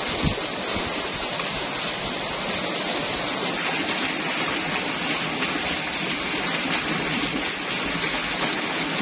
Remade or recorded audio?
recorded